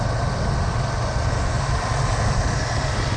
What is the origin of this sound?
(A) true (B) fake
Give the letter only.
A